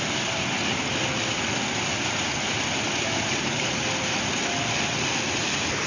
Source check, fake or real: real